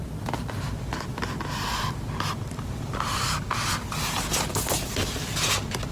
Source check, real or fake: real